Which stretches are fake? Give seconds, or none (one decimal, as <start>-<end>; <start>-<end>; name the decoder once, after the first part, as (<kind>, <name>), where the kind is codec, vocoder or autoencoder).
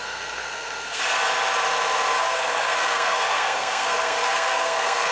0.0-1.0 (codec, SNAC); 2.2-5.1